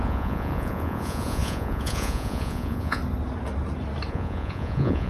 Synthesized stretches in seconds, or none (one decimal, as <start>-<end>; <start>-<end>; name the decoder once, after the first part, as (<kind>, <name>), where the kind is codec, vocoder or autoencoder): 0.0-3.0 (vocoder, Vocos); 4.1-5.1

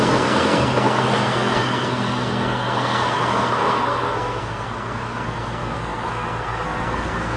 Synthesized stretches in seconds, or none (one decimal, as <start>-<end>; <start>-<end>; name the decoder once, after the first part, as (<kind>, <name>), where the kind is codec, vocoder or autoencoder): 0.0-7.4 (codec, SNAC)

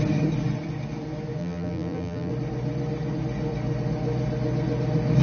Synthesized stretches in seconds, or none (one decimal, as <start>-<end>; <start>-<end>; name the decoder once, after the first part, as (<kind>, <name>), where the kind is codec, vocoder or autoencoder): 1.4-2.3 (vocoder, BigVGAN v2)